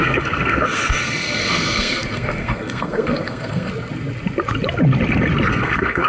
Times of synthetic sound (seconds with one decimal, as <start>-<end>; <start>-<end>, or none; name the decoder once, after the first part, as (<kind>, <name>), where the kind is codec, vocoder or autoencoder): 0.0-3.7 (codec, SNAC); 5.5-6.1